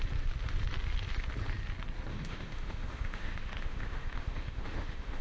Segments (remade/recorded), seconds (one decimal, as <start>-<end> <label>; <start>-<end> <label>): 0.0-2.1 recorded; 2.1-5.2 remade